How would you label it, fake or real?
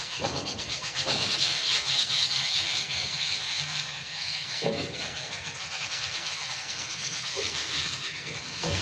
fake